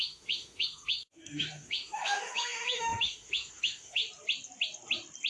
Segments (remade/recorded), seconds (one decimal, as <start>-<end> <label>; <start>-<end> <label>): 0.0-4.0 remade; 4.0-5.3 recorded